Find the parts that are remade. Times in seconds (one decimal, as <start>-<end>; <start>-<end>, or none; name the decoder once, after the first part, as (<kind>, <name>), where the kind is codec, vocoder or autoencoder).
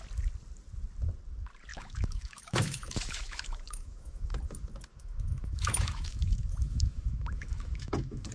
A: 1.7-4.4 (autoencoder, DAC-VAE); 4.9-8.3